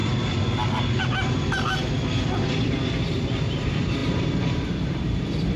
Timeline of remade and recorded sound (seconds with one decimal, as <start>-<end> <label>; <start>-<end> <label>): 0.0-3.4 recorded; 3.4-5.6 remade